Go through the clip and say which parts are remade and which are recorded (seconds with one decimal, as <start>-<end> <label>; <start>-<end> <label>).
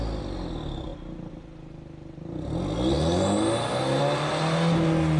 0.0-5.2 recorded